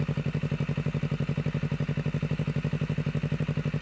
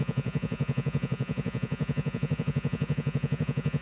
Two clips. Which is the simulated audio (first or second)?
second